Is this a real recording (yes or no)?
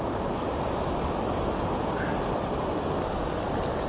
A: yes